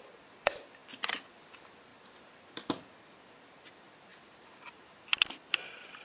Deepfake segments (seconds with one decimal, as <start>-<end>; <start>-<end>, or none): 1.9-2.4; 4.1-5.0